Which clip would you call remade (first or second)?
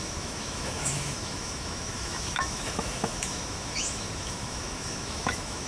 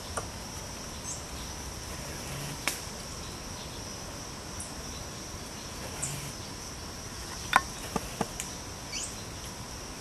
first